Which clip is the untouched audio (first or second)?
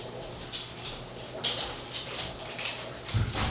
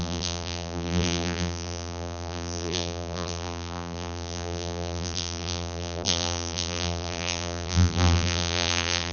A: first